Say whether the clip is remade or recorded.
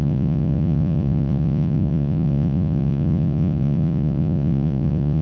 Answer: remade